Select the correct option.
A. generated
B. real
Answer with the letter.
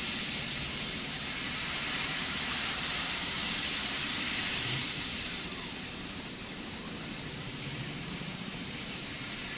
A